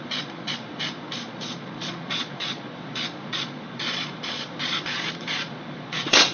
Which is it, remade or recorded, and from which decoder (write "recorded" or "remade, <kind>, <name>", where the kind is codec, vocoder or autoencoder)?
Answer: remade, vocoder, Vocos